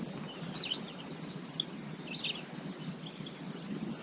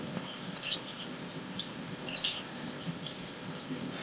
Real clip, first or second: first